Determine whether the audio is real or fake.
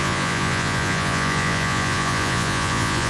fake